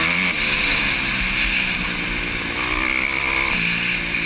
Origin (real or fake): real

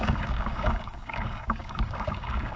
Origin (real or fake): fake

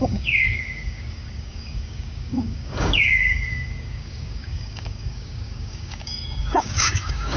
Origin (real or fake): fake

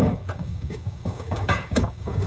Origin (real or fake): fake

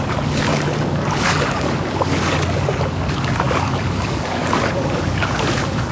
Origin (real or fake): fake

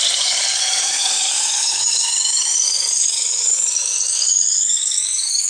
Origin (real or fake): fake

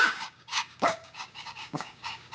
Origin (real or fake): fake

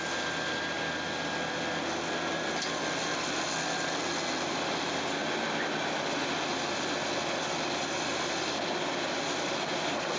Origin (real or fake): real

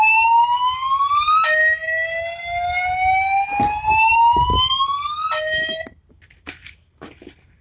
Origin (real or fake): real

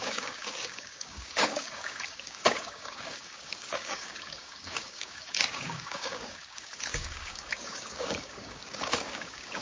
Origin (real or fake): fake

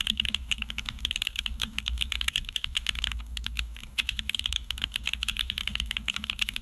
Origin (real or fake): fake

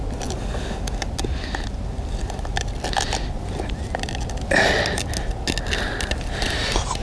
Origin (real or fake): real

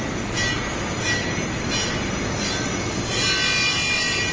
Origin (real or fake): real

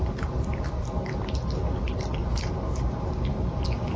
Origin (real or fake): real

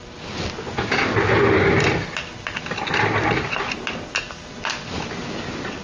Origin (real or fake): real